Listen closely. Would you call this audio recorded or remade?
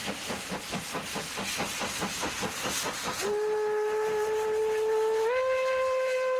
recorded